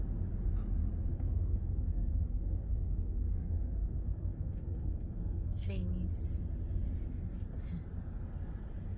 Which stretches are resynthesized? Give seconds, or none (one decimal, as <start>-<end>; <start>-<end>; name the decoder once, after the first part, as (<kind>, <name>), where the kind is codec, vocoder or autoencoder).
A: 1.1-5.9 (codec, SNAC)